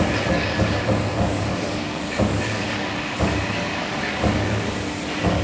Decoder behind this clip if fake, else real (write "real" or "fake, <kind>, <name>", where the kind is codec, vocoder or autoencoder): fake, codec, DAC